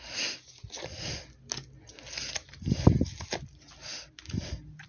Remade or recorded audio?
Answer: recorded